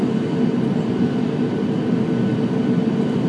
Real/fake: real